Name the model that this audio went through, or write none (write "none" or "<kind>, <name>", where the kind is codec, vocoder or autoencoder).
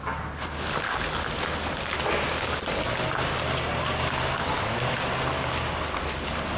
none